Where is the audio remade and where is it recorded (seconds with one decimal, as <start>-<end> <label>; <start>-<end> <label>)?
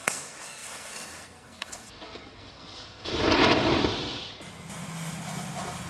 0.0-3.1 remade; 3.1-5.9 recorded